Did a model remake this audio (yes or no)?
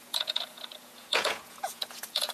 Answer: yes